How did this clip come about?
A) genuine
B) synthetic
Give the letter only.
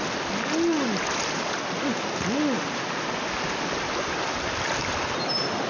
A